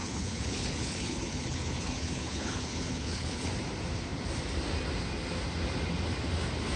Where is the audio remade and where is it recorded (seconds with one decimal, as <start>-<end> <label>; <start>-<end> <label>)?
0.0-3.5 remade; 3.5-6.8 recorded